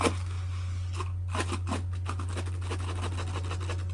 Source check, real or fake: real